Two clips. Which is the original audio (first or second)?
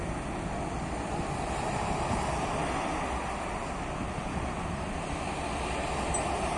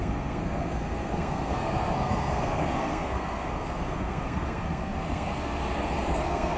first